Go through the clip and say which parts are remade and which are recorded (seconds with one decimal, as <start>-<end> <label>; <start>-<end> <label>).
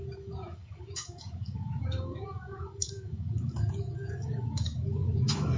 0.0-5.6 remade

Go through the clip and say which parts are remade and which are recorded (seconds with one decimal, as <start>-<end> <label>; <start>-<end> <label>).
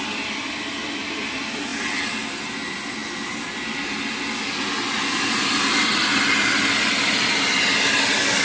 0.0-8.4 recorded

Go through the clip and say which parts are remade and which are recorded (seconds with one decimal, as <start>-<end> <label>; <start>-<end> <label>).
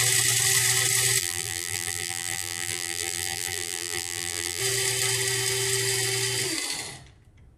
0.0-1.2 recorded; 1.2-4.6 remade; 4.6-7.6 recorded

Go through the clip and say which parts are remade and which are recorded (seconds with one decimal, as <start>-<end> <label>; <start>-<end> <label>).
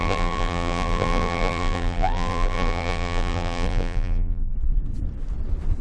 0.0-4.5 remade; 4.5-5.8 recorded